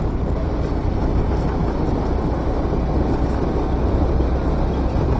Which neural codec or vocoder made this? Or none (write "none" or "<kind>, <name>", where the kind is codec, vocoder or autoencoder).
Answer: none